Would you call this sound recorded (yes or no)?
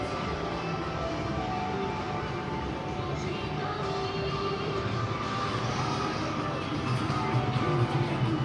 no